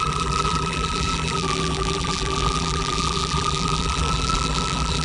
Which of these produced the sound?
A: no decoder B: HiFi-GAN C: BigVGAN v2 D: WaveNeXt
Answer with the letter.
C